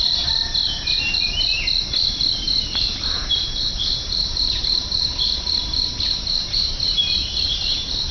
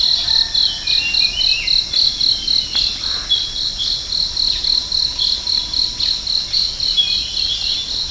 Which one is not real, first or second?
first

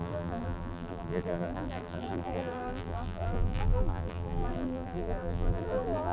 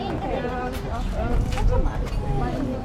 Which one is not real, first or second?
first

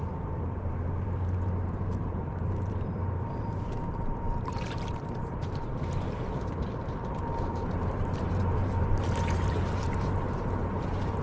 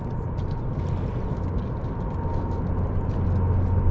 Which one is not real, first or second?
first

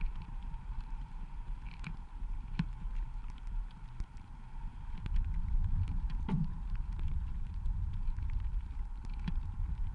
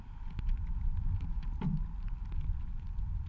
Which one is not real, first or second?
first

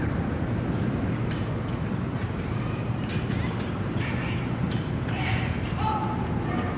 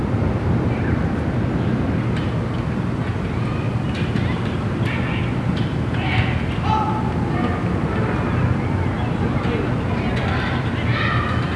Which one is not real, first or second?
first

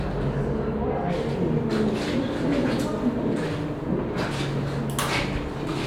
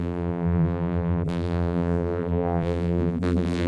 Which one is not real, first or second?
second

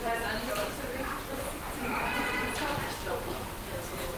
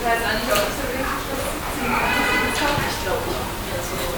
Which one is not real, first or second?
first